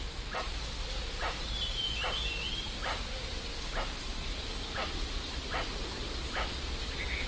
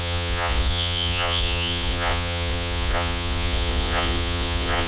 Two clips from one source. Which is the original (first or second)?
first